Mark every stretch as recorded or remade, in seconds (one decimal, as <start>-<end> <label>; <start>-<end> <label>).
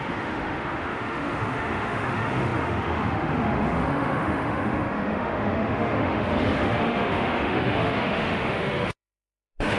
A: 0.0-9.8 remade